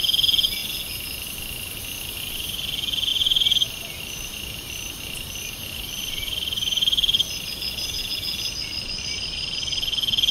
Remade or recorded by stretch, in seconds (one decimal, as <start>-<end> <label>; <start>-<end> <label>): 0.0-3.1 recorded; 3.1-8.1 remade; 8.1-10.3 recorded